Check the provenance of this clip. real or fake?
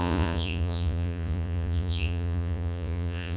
fake